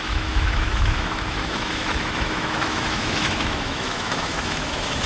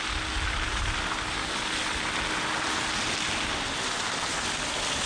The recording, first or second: second